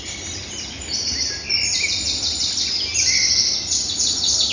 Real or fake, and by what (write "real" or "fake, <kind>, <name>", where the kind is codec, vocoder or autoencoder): real